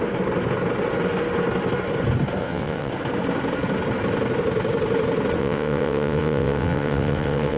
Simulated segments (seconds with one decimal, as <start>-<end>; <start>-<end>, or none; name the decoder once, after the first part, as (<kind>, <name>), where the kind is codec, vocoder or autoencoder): 2.4-2.9 (vocoder, WaveNeXt); 5.4-7.6